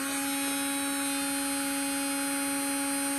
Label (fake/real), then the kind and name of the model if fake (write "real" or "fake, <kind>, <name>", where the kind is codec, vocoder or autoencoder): real